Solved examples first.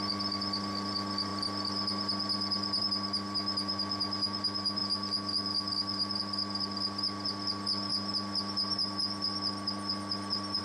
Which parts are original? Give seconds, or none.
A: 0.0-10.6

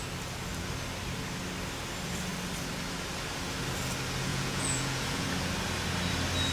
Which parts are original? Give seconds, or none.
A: 0.0-4.3; 5.3-6.5